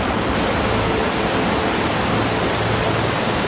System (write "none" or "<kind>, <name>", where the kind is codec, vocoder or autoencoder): none